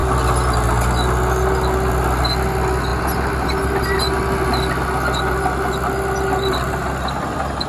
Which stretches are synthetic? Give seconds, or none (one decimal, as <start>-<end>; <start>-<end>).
none